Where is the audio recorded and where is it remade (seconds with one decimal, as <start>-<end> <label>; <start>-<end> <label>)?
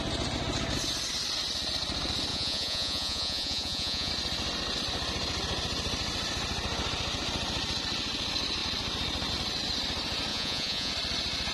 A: 0.0-2.3 recorded; 2.3-4.1 remade; 4.1-10.3 recorded; 10.3-10.9 remade; 10.9-11.5 recorded